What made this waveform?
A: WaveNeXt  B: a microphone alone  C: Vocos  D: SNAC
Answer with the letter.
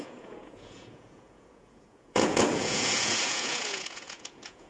C